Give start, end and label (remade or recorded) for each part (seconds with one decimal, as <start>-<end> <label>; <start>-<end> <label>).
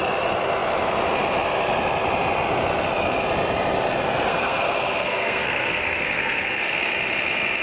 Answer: 0.0-4.3 recorded; 4.3-6.8 remade; 6.8-7.6 recorded